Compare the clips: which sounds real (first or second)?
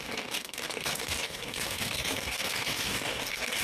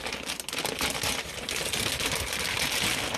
second